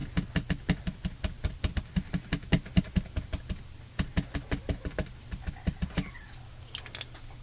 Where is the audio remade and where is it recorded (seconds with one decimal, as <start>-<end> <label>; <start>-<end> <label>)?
0.0-7.4 recorded